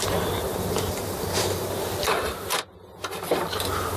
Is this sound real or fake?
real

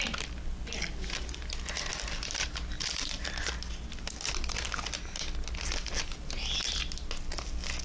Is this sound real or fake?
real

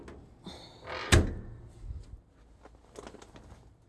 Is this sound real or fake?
real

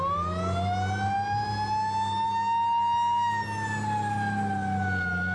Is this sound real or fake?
real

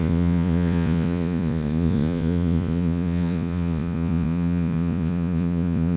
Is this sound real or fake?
fake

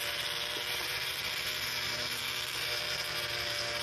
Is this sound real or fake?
real